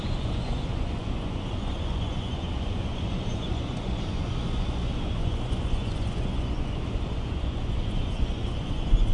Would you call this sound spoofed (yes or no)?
yes